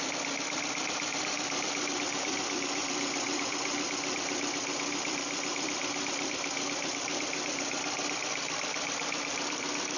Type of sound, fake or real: fake